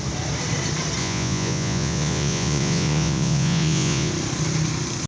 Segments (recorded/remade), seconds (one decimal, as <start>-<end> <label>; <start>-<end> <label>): 0.0-1.0 recorded; 1.0-4.1 remade; 4.1-5.1 recorded